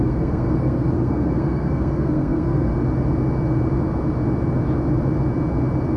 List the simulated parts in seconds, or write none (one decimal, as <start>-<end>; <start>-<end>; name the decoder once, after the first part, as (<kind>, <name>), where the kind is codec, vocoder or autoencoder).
0.0-2.7 (codec, SNAC)

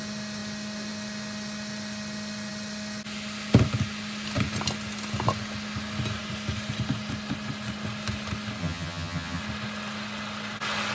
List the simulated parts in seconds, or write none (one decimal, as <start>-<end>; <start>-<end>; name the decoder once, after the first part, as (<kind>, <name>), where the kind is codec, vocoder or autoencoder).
8.6-9.4 (vocoder, HiFi-GAN)

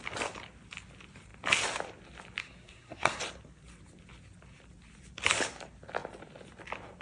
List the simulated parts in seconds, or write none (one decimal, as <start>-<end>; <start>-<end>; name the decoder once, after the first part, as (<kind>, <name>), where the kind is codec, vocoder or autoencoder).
2.4-3.2 (codec, SNAC)

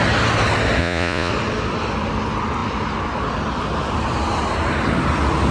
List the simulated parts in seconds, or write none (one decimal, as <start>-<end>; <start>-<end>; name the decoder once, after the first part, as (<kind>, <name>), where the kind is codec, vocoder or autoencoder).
0.8-1.3 (vocoder, Vocos)

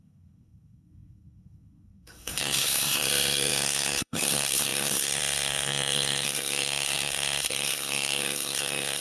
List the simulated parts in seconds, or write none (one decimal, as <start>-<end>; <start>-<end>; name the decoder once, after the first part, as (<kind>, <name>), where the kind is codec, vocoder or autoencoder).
0.0-9.0 (codec, SNAC)